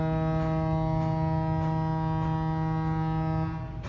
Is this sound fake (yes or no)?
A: no